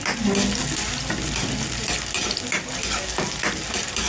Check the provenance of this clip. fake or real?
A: real